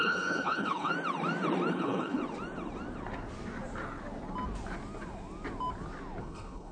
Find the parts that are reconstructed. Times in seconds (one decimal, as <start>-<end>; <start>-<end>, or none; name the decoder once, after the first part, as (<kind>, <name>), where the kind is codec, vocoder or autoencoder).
0.0-0.9 (codec, HILCodec); 1.7-2.2; 6.2-6.7